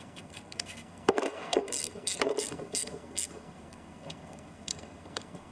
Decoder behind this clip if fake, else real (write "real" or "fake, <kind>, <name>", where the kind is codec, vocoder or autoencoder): fake, codec, SNAC